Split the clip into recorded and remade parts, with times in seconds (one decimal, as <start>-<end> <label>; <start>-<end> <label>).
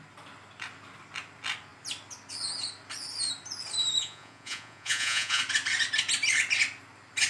0.0-4.0 recorded; 4.0-5.4 remade; 5.4-7.3 recorded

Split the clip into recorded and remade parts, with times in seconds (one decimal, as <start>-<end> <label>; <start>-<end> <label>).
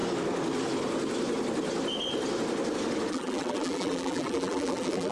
0.0-3.1 recorded; 3.1-5.1 remade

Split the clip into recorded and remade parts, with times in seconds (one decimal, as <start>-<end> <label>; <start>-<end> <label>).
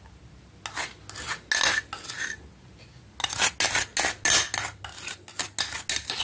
0.0-6.2 recorded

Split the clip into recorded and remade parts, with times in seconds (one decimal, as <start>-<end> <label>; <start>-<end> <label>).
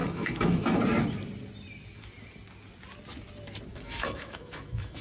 0.0-0.8 remade; 0.8-3.7 recorded; 3.7-5.0 remade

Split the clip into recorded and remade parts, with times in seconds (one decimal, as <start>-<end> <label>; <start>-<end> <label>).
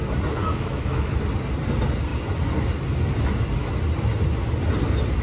0.0-0.4 recorded; 0.4-1.2 remade; 1.2-5.2 recorded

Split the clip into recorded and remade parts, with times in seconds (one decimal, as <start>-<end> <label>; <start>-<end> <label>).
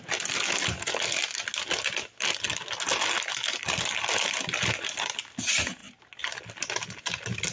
0.0-7.5 recorded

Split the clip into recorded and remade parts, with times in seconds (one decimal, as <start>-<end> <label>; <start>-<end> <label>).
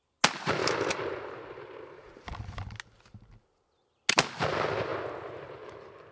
0.0-6.1 recorded